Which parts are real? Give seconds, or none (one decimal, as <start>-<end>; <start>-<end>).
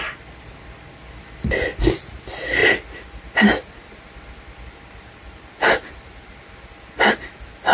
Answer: 0.0-7.7